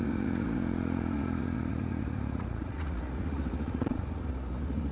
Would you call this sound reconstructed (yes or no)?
yes